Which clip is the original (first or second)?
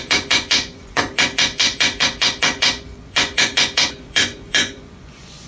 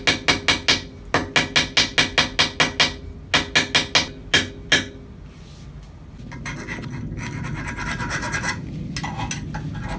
second